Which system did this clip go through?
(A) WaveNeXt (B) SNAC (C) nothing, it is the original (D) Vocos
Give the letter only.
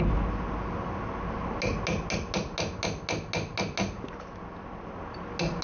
C